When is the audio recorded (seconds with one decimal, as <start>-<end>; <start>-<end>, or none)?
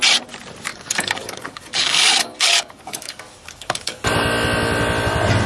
0.0-0.7; 4.0-5.5